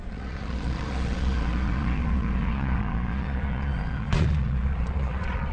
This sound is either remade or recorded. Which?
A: remade